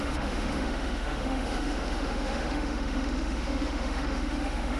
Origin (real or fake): fake